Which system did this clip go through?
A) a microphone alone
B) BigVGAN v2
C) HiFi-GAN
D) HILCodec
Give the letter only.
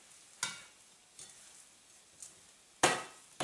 A